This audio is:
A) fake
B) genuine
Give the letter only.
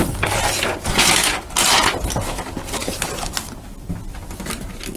B